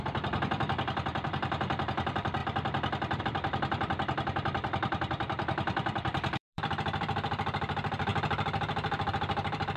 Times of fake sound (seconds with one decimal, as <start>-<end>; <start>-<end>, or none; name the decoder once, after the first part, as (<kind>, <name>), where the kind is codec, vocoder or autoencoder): 0.0-2.4 (vocoder, BigVGAN v2); 3.2-9.8